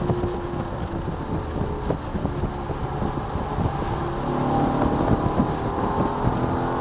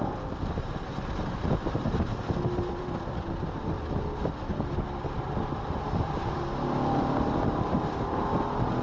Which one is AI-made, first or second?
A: second